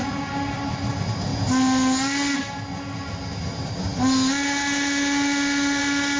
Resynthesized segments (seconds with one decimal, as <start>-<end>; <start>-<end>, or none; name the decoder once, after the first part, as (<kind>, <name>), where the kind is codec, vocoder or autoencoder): none